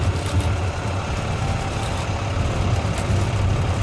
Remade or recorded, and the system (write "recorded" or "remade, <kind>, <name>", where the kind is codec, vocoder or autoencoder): recorded